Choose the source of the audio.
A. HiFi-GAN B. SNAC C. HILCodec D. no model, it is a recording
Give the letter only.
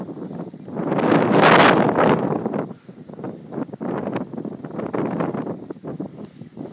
D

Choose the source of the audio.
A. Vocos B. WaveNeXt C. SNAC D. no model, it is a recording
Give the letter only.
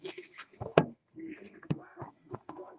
C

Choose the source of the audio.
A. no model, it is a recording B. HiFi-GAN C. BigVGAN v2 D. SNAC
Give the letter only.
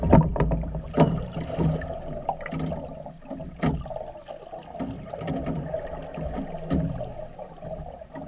A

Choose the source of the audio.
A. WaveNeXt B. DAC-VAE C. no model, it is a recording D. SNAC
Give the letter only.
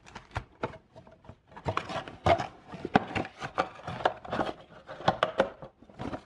C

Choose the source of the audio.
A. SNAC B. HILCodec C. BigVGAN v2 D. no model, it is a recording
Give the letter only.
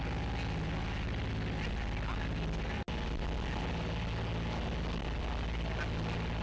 D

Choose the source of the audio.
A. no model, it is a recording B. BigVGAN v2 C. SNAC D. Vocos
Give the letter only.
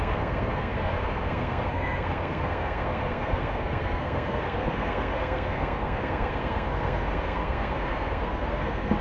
C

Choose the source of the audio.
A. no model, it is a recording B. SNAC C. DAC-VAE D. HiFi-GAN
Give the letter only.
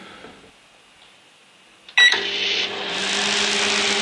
A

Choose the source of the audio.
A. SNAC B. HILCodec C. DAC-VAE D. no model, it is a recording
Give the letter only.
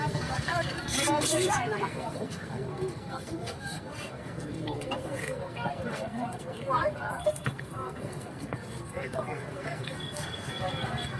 A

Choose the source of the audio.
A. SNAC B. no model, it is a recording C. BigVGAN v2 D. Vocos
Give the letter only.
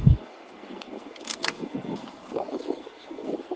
A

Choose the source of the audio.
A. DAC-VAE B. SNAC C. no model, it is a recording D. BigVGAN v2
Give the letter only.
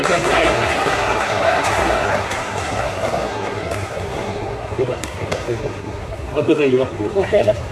B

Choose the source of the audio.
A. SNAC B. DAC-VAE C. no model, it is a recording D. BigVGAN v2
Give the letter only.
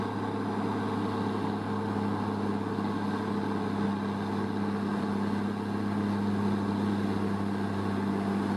C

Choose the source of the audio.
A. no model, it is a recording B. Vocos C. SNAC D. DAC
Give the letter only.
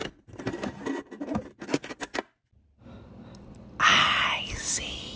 A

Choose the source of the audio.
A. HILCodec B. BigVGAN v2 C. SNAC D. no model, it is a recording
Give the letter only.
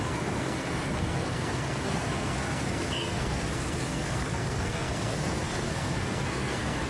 C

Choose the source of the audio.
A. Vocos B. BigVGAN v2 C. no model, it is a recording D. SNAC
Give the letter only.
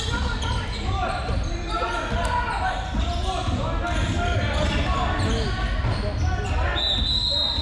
C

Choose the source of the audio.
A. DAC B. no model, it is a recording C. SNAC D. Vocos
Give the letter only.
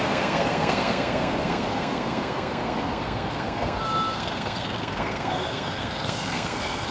C